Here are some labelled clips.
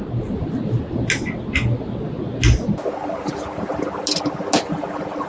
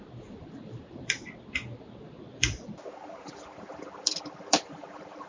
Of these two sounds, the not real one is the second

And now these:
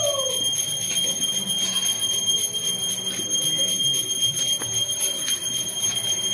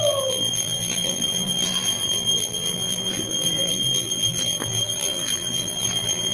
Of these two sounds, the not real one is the second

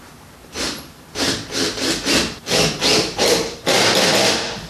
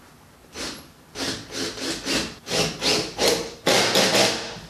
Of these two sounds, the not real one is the first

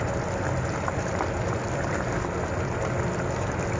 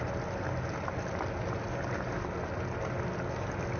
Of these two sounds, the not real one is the first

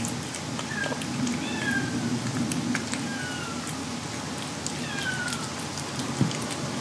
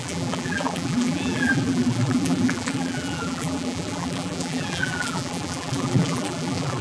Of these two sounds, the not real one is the second